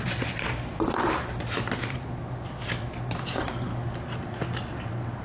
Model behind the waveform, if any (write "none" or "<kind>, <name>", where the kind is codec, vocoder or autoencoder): vocoder, BigVGAN v2